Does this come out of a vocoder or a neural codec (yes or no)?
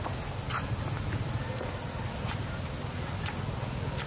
no